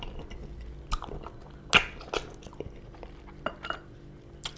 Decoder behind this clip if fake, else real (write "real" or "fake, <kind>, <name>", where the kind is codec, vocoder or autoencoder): real